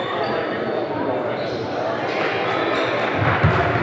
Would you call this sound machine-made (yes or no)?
no